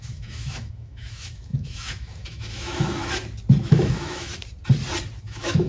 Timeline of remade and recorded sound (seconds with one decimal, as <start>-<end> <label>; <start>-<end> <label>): 0.0-3.0 remade; 3.0-3.6 recorded; 3.6-4.3 remade; 4.3-5.2 recorded; 5.2-5.7 remade